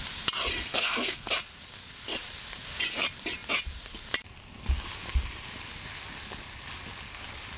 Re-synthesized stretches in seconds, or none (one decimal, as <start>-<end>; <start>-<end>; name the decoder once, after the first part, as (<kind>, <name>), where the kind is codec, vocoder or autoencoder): 0.7-1.3 (codec, SNAC)